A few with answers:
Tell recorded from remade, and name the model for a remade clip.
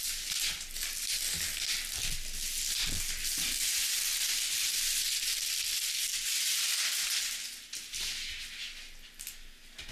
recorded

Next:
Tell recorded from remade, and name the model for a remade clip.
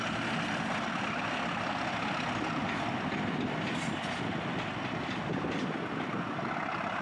recorded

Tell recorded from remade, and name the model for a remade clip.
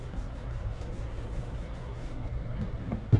remade, codec, SNAC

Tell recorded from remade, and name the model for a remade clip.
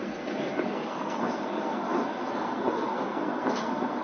remade, codec, SNAC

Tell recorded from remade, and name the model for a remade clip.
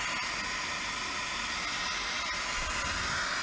recorded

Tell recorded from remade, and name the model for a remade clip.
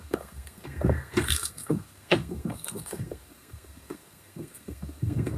remade, codec, SNAC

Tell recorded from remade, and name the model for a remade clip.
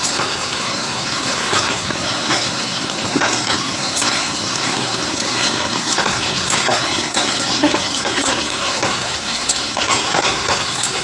remade, codec, SNAC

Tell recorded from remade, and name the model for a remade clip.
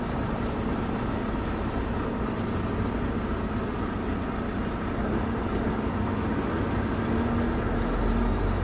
recorded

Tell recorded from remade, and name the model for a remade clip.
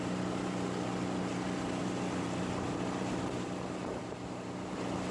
recorded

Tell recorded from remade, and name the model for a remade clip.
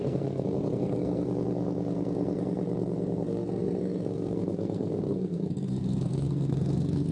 remade, codec, SNAC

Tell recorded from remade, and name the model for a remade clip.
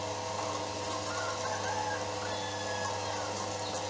recorded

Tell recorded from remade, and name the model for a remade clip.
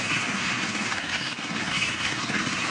remade, codec, SNAC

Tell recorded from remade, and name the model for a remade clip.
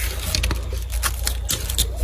recorded